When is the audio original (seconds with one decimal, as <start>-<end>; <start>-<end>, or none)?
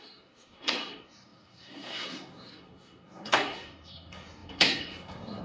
none